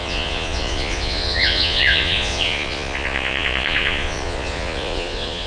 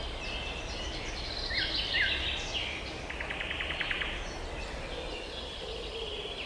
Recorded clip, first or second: second